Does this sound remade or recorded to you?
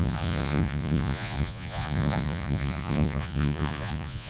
remade